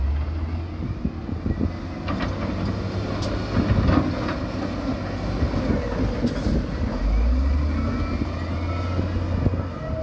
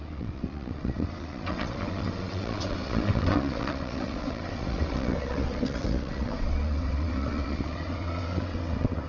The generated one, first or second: second